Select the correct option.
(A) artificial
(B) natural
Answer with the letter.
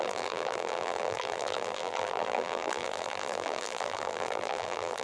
A